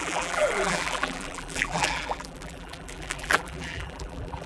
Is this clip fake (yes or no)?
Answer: yes